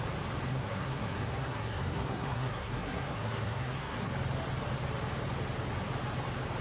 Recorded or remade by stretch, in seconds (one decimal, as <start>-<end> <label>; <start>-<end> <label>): 0.0-0.5 recorded; 0.5-4.1 remade; 4.1-6.6 recorded